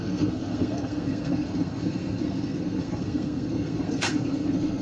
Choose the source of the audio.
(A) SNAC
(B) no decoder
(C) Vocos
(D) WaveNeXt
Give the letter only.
A